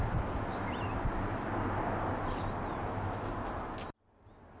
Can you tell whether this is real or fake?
real